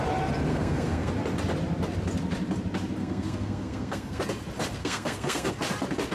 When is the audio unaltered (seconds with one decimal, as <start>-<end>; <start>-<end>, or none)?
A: 0.0-0.5; 1.1-3.0; 4.2-4.8; 5.5-6.1